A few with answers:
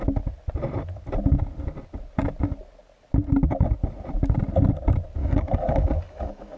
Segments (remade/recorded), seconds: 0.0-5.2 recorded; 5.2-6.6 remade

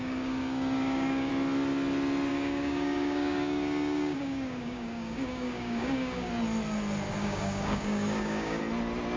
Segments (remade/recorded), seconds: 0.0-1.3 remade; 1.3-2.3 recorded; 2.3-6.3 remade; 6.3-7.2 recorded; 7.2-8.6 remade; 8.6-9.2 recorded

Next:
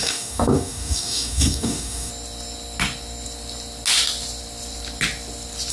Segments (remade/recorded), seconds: 0.0-2.1 remade; 2.1-5.7 recorded

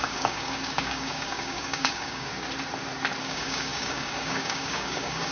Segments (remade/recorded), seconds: 0.0-2.3 remade; 2.3-3.2 recorded; 3.2-5.3 remade

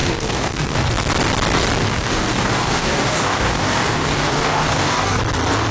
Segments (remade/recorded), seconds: 0.0-0.9 remade; 0.9-1.8 recorded; 1.8-5.2 remade; 5.2-5.7 recorded